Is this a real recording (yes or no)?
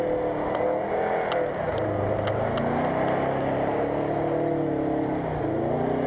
yes